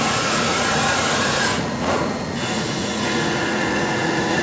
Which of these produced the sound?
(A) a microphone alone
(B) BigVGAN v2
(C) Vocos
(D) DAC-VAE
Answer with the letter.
C